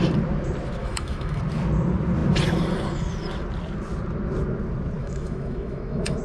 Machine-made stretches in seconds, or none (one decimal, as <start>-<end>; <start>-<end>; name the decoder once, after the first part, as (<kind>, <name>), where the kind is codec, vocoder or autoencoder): 0.8-1.4 (autoencoder, DAC-VAE); 5.0-6.2